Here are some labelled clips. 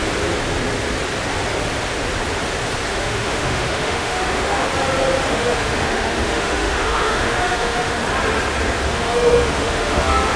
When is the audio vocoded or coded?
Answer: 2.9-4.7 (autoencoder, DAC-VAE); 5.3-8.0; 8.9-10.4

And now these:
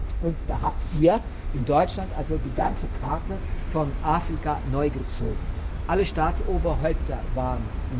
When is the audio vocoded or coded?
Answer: 0.0-1.6 (autoencoder, DAC-VAE); 2.4-3.1; 5.0-5.7

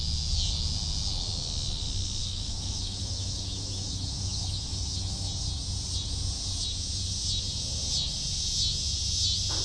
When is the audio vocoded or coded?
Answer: 2.2-5.3 (autoencoder, DAC-VAE)

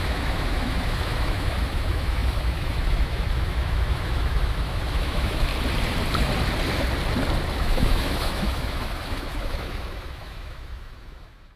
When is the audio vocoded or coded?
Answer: 0.0-5.5 (autoencoder, DAC-VAE); 7.5-11.6